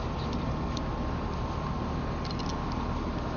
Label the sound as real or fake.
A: real